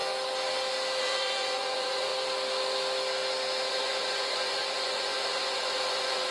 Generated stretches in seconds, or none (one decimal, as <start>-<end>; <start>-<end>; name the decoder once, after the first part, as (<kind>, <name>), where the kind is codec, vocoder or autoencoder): 1.0-2.1 (vocoder, Vocos); 3.7-6.3